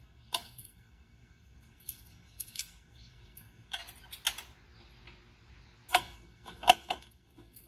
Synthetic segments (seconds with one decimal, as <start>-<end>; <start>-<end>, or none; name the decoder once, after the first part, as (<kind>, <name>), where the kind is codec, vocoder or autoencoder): 0.0-3.8 (codec, SNAC); 5.9-7.7